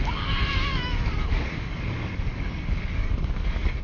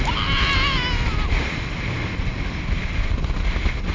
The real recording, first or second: second